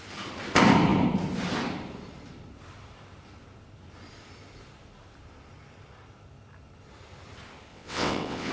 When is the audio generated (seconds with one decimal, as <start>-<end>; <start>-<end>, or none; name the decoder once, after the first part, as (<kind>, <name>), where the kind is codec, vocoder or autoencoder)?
7.7-8.5 (vocoder, WaveNeXt)